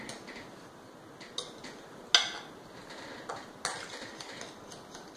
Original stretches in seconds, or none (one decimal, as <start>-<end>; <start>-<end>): 0.0-5.2